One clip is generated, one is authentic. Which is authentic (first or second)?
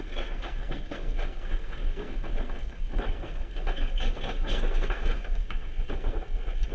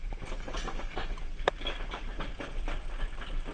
second